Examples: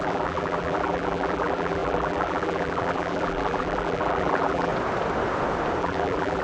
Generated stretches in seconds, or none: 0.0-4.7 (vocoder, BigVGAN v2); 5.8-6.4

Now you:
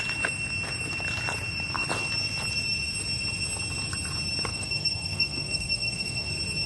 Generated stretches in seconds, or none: 4.5-6.3 (codec, SNAC)

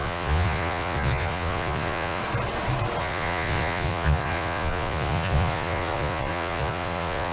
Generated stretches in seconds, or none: 0.0-2.2 (vocoder, Vocos); 3.0-7.3

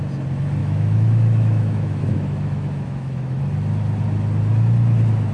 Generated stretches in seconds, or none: 0.6-3.4 (autoencoder, DAC-VAE)